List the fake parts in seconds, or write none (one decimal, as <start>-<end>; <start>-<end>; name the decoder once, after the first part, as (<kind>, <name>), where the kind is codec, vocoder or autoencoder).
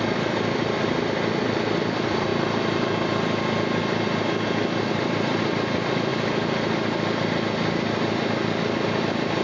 0.0-2.3 (vocoder, BigVGAN v2); 4.9-6.1; 9.0-9.4